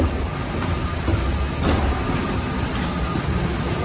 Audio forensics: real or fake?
real